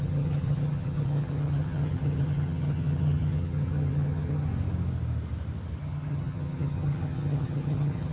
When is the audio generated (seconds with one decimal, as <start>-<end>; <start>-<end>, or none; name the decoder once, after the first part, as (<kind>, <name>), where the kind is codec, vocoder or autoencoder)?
0.0-4.5 (vocoder, HiFi-GAN); 5.8-8.1

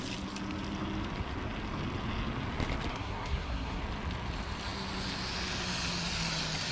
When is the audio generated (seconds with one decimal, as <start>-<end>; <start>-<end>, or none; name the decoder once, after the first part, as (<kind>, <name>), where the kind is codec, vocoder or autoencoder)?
2.9-3.8 (codec, SNAC)

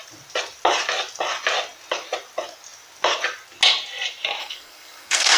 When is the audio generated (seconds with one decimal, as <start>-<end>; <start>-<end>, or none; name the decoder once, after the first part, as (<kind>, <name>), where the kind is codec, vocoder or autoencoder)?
4.4-5.4 (codec, SNAC)